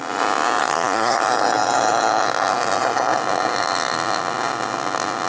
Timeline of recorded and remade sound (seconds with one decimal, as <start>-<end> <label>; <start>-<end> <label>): 0.0-0.6 recorded; 0.6-1.2 remade; 1.2-5.3 recorded